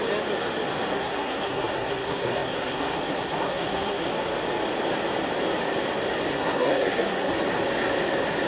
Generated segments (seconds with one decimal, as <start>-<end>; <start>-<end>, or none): 0.9-4.1; 6.3-7.3

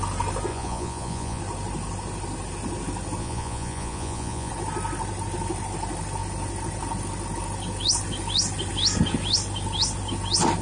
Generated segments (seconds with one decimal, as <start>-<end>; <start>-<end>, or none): 0.5-1.4; 3.2-4.5

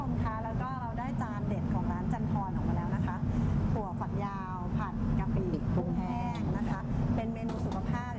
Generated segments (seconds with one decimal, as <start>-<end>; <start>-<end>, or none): none

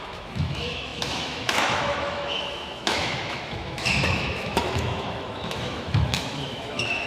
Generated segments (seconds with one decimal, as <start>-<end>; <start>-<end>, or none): 0.0-7.1